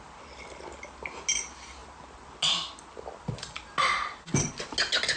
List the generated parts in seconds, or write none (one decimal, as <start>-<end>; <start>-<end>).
none